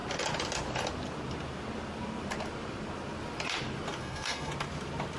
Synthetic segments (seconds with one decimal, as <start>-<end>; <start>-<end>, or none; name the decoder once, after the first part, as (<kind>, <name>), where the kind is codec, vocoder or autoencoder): 4.0-4.5 (codec, SNAC)

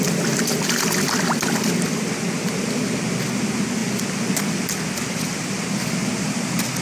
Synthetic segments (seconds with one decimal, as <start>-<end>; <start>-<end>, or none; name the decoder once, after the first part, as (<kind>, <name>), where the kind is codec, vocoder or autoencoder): none

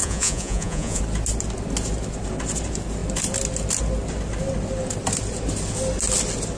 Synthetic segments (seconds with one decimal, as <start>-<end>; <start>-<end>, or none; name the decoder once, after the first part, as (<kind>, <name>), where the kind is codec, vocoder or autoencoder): 0.0-1.0 (vocoder, Vocos)

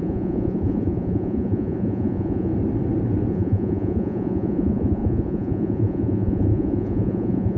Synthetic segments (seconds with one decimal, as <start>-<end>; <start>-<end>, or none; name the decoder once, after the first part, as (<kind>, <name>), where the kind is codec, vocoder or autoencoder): 0.0-2.5 (vocoder, Vocos); 3.3-7.6

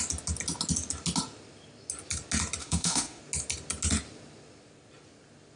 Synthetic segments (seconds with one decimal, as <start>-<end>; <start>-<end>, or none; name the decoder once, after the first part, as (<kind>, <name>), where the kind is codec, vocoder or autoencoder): 2.6-3.2 (autoencoder, DAC-VAE)

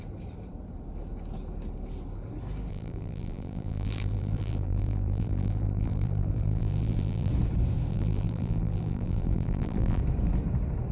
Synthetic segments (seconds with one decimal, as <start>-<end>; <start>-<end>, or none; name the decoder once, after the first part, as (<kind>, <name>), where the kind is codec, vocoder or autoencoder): 2.7-7.3 (vocoder, BigVGAN v2); 7.9-10.0

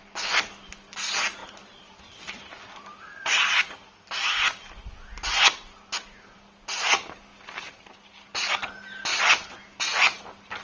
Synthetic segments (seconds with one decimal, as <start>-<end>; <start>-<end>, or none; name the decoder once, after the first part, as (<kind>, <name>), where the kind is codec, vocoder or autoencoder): none

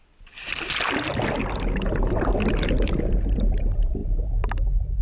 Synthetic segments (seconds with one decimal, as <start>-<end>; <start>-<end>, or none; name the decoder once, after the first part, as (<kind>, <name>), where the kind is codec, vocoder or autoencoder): 0.0-4.0 (vocoder, BigVGAN v2)